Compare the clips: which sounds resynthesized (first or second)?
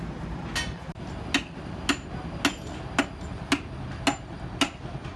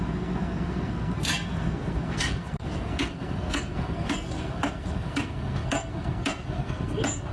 second